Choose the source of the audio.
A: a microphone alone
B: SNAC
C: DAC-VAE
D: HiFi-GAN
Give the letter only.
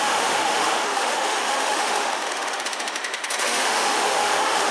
C